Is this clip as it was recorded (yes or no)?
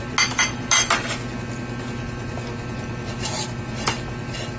yes